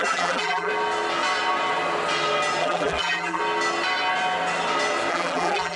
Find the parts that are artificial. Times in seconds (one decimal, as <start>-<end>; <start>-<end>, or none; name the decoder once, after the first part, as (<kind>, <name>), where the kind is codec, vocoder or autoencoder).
0.0-0.7 (vocoder, BigVGAN v2); 2.6-3.4; 5.1-5.8